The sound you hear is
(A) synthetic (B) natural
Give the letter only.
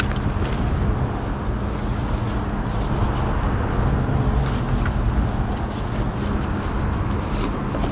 B